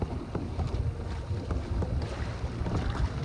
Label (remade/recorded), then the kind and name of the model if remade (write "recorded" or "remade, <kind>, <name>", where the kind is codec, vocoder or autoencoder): recorded